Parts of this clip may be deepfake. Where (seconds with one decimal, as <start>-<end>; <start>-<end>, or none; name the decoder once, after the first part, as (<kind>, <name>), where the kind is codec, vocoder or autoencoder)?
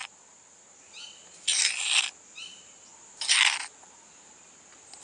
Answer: none